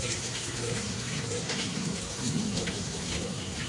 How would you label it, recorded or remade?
remade